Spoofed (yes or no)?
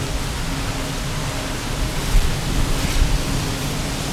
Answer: no